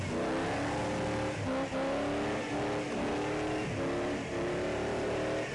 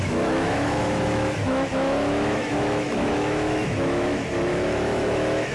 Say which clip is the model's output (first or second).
second